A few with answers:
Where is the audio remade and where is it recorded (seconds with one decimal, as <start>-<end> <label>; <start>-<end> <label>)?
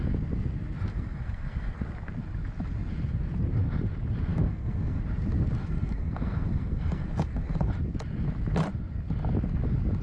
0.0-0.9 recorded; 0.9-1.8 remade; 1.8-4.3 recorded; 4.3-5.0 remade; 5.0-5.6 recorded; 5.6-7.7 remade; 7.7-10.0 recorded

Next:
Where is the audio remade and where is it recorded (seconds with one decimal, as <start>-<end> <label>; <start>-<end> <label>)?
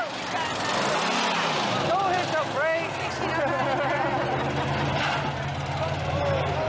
0.0-6.7 recorded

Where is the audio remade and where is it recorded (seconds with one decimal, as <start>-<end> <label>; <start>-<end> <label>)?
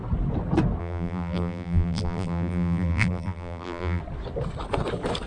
0.0-0.8 recorded; 0.8-4.0 remade; 4.0-5.3 recorded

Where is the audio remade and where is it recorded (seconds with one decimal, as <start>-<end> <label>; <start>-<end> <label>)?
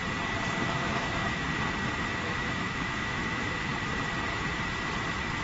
0.0-0.6 recorded; 0.6-1.2 remade; 1.2-2.2 recorded; 2.2-3.7 remade; 3.7-5.4 recorded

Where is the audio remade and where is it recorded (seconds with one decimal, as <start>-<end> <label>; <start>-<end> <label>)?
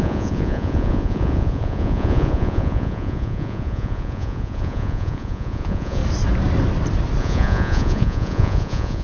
0.0-6.0 remade; 6.0-7.2 recorded; 7.2-9.0 remade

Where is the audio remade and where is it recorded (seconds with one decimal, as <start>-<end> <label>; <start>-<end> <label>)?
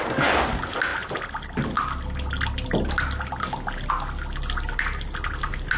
0.0-5.8 recorded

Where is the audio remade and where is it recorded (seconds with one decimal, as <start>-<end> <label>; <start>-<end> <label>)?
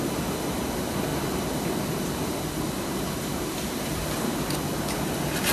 0.0-5.5 recorded